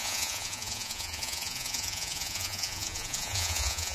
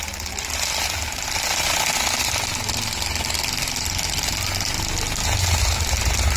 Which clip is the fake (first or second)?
first